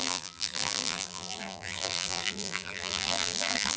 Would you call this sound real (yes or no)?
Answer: no